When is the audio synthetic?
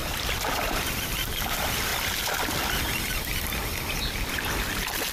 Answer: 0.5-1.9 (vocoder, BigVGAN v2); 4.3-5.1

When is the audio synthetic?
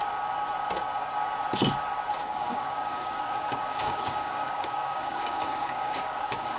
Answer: 2.2-6.6 (codec, DAC)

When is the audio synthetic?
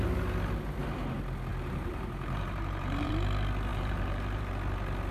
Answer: 1.5-3.1 (vocoder, BigVGAN v2); 3.7-4.5